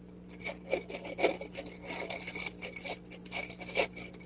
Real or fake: real